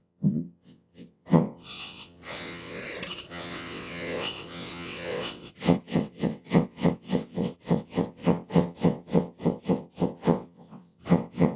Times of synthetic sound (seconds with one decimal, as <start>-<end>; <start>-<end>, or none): 0.0-2.8; 3.3-11.6